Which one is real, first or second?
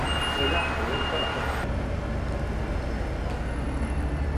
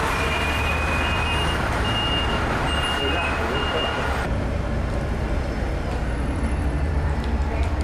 first